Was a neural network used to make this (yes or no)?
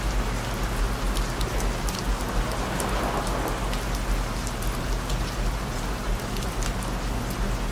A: no